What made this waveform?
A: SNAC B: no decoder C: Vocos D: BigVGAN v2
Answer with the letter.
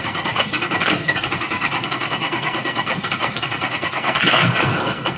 A